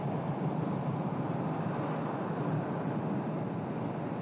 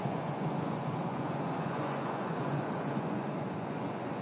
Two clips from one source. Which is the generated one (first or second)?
second